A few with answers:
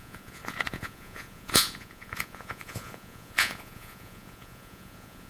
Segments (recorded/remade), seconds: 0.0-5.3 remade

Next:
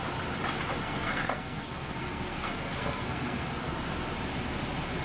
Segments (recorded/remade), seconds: 0.0-0.8 recorded; 0.8-3.8 remade; 3.8-5.0 recorded